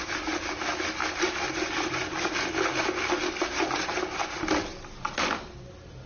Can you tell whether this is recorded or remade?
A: recorded